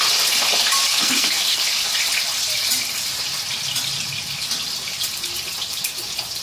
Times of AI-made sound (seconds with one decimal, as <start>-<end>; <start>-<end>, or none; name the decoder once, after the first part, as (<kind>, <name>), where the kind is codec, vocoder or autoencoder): 0.9-1.6 (codec, SNAC)